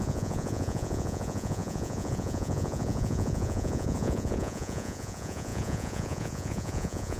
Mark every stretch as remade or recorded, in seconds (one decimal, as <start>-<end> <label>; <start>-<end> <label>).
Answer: 0.0-7.2 remade